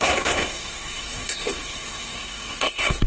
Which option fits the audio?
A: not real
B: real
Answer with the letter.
A